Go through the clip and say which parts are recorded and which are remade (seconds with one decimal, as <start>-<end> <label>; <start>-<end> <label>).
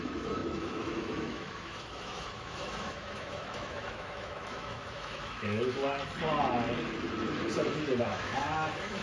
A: 0.0-5.8 remade; 5.8-8.0 recorded; 8.0-9.0 remade